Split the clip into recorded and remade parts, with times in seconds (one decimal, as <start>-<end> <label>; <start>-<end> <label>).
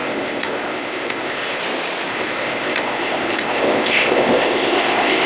0.0-1.6 remade; 1.6-2.1 recorded; 2.1-5.3 remade